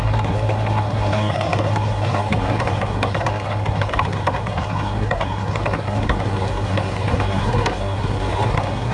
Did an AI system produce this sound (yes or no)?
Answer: yes